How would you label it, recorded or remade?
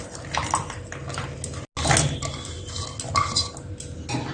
recorded